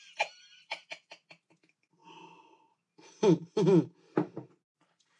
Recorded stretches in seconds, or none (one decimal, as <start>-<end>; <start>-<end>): 0.0-5.2